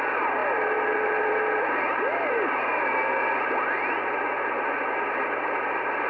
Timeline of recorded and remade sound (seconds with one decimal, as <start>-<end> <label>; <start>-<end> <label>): 0.0-6.1 recorded